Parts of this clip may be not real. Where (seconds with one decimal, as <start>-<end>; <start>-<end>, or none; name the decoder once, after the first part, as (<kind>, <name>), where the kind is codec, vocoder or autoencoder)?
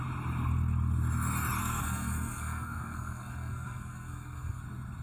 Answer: 1.6-4.6 (codec, SNAC)